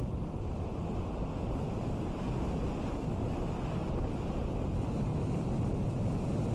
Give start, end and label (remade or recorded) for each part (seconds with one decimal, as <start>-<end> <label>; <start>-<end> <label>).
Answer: 0.0-6.5 recorded